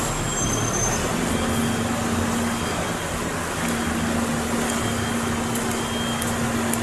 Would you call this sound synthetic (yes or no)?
no